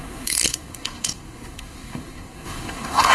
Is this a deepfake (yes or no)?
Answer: yes